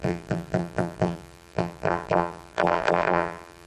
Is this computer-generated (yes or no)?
yes